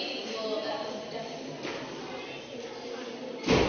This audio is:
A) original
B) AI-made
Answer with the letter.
A